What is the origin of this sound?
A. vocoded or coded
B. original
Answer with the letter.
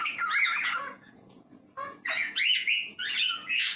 A